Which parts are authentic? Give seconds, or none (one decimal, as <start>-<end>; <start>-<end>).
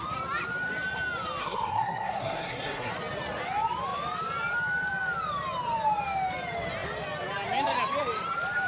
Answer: 0.0-1.4; 2.9-8.7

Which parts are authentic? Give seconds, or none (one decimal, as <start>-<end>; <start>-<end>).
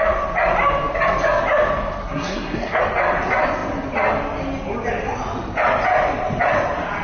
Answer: 0.0-2.0; 2.8-7.0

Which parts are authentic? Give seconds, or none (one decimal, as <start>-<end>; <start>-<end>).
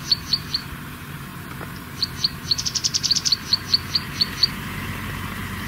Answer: 0.0-5.7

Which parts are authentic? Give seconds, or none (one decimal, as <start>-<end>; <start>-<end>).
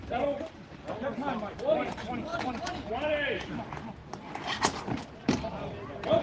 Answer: 0.0-6.2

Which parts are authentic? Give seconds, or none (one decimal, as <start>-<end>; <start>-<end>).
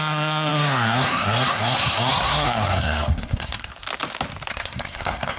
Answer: 3.7-4.5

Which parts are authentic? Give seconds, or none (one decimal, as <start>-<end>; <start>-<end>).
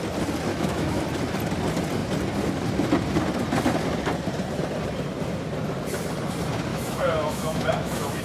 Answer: 0.0-0.5; 1.0-6.7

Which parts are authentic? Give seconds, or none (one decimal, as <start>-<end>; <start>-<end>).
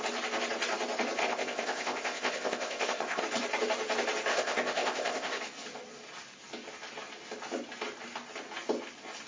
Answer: 0.0-1.2; 3.2-4.3; 5.4-9.3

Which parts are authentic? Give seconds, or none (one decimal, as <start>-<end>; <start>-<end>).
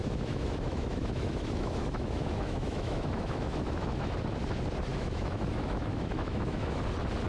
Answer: 4.2-4.9; 6.8-7.3